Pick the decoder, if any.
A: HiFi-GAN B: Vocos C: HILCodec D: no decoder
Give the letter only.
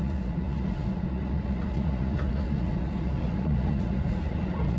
B